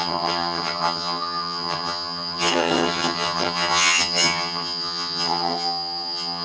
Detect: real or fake fake